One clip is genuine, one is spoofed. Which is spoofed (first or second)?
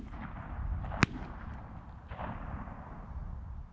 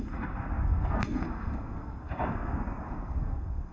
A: second